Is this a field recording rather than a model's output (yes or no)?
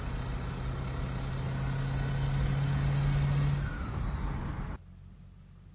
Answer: yes